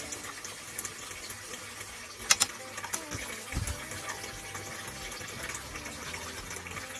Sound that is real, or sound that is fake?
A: real